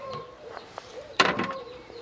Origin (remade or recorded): remade